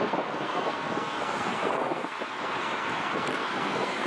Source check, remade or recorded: remade